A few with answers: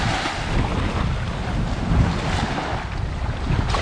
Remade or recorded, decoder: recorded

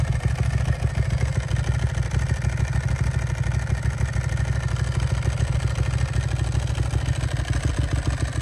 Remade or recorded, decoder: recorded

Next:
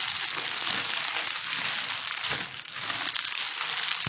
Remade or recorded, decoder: recorded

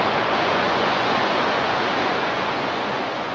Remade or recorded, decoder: remade, vocoder, Vocos